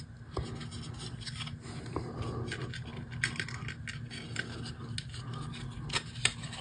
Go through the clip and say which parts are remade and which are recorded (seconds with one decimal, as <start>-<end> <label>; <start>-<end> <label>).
0.0-6.6 recorded